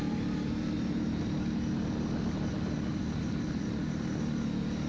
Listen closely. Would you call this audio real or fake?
real